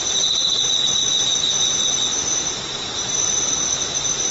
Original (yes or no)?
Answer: no